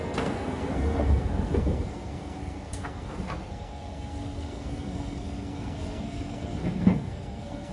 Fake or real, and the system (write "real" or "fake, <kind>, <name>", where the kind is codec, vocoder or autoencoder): fake, codec, SNAC